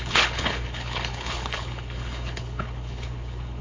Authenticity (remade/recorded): remade